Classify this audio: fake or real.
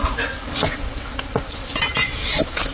real